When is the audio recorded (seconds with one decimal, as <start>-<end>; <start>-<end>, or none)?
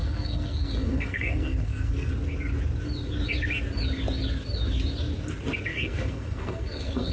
2.1-5.7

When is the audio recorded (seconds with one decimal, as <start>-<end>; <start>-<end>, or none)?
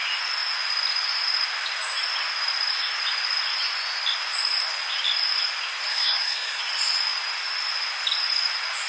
0.0-5.9; 6.6-8.9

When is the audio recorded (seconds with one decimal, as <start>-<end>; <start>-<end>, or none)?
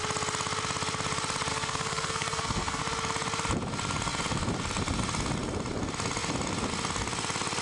0.0-1.5; 2.8-7.6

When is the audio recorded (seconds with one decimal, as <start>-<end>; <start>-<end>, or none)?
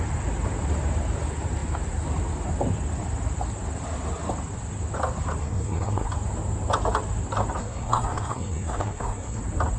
0.0-5.4; 6.1-7.6; 9.4-9.8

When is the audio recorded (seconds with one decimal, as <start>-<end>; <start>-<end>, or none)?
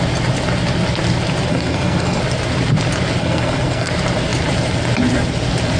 0.0-1.5; 2.2-3.2; 3.9-5.8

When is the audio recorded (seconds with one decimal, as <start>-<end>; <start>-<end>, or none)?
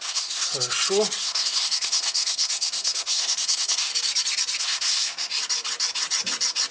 0.5-1.2; 3.9-4.6; 5.3-6.7